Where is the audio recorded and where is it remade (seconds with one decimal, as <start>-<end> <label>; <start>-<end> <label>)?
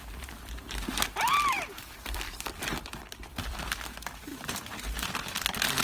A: 0.0-5.8 remade